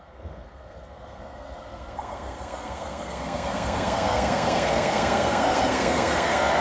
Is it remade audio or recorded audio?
remade